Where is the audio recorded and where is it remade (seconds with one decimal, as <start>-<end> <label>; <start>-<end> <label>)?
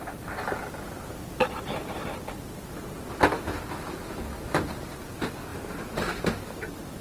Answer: 0.0-7.0 recorded